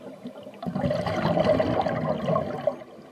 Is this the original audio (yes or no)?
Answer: yes